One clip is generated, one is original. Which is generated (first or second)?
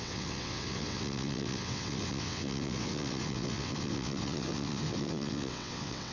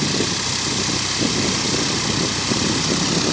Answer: first